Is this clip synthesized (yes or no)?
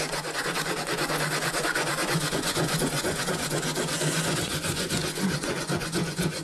yes